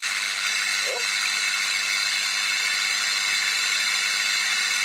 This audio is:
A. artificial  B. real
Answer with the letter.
B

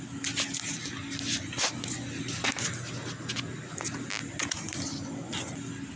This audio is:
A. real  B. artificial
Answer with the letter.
A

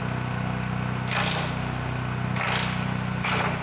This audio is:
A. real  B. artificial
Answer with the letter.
A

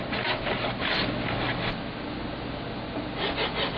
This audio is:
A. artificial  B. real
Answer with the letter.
B